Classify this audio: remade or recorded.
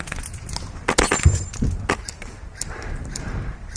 recorded